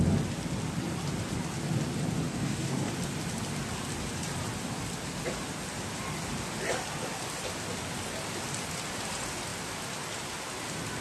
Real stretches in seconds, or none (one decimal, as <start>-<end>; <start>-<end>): 0.0-2.3; 2.9-11.0